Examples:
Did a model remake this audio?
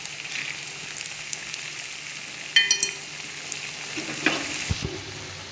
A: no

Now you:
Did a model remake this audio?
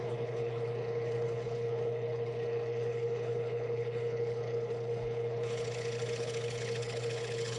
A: yes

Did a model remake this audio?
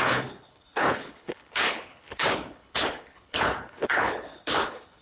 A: yes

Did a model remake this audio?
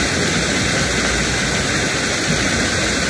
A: no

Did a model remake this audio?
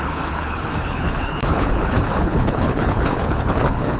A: yes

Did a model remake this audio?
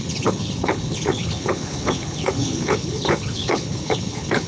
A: yes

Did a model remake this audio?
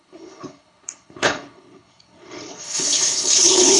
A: yes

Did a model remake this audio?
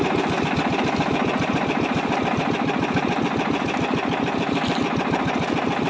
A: no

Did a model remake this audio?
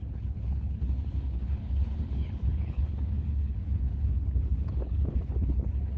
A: yes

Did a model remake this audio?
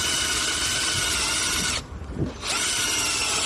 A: no